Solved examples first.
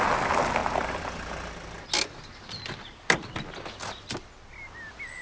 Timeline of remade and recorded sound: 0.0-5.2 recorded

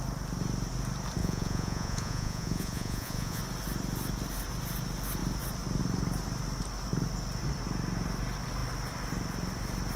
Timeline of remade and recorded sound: 0.0-1.2 recorded; 1.2-3.4 remade; 3.4-10.0 recorded